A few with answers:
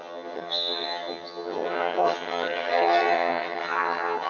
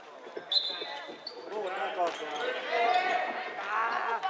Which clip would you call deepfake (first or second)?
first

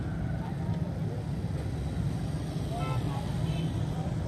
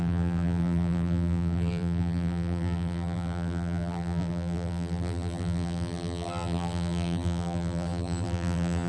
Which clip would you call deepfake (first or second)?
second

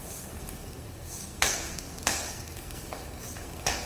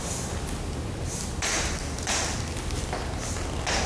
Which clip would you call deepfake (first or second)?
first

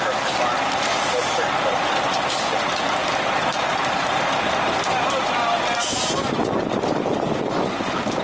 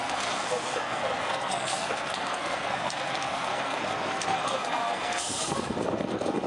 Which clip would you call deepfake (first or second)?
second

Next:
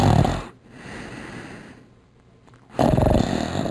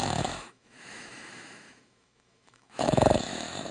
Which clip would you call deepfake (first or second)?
second